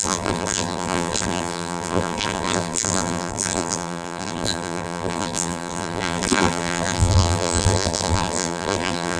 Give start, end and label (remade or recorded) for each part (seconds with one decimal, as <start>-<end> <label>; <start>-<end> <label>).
0.0-9.2 remade